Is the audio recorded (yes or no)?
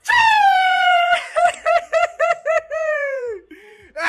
no